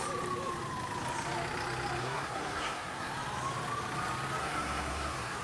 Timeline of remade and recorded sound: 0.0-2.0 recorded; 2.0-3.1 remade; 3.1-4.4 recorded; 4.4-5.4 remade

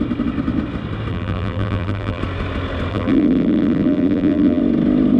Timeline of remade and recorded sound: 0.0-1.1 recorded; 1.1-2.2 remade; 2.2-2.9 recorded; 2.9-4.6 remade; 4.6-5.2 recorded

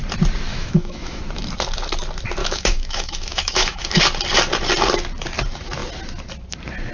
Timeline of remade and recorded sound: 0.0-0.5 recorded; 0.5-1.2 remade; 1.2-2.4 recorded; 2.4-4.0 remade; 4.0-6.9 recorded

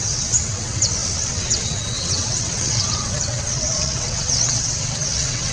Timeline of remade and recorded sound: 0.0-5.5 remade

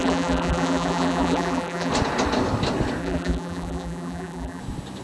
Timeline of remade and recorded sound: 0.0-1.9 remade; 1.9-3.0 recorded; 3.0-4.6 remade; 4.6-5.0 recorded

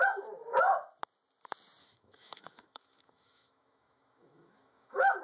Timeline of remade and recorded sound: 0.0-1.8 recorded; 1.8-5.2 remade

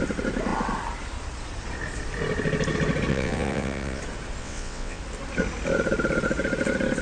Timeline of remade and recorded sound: 0.0-3.1 recorded; 3.1-4.0 remade; 4.0-4.4 recorded; 4.4-5.0 remade; 5.0-7.0 recorded